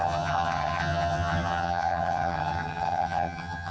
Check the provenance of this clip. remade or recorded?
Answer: remade